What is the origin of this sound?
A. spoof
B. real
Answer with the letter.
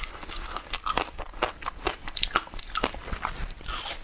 B